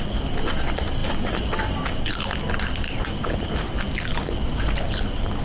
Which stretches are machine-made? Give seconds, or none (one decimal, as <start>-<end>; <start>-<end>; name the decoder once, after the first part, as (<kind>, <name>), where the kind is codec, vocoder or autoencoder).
none